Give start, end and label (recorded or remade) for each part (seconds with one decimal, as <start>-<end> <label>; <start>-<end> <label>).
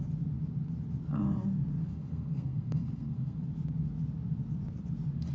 0.0-1.8 recorded; 1.8-3.4 remade; 3.4-5.3 recorded